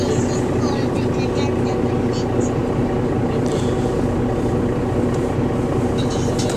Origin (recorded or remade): recorded